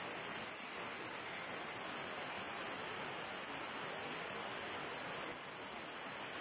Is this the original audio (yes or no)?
yes